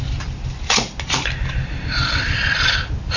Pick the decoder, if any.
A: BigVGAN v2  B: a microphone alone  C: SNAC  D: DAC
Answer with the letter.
B